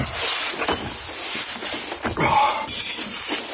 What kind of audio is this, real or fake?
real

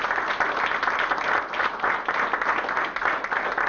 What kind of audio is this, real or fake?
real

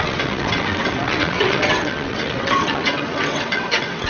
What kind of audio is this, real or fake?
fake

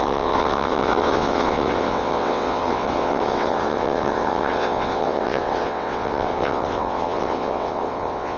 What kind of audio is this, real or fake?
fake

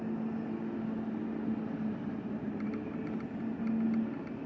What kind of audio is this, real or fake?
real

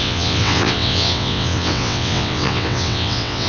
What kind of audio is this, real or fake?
fake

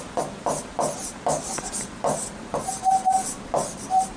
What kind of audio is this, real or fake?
real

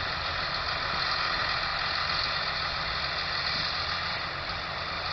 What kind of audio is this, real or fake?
real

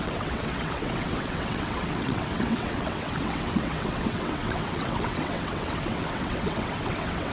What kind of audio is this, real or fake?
fake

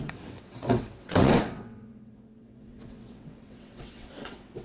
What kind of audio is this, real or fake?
fake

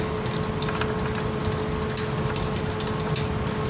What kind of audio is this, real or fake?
real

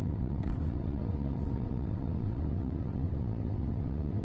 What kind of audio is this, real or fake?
fake